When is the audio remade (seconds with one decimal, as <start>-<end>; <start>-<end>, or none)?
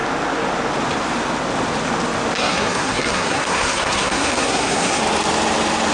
2.4-5.0